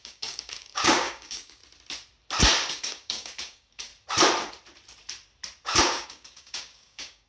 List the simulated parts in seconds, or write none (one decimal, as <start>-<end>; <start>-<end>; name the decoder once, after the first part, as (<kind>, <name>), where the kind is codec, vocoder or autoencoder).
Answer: 0.0-1.6 (codec, DAC); 2.7-3.9; 5.8-7.3